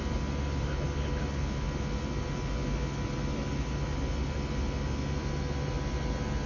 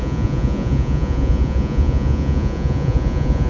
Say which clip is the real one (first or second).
first